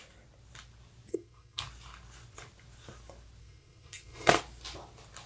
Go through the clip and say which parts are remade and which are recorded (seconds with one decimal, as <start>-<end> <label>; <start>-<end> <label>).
0.0-1.1 recorded; 1.1-1.6 remade; 1.6-3.4 recorded; 3.4-4.4 remade; 4.4-5.3 recorded